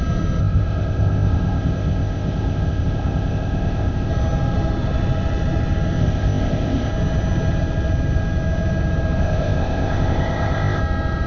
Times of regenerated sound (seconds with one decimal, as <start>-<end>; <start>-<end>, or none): 0.4-4.1; 6.0-6.9; 9.2-10.8